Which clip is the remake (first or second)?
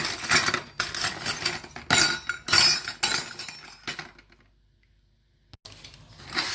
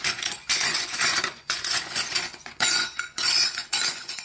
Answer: second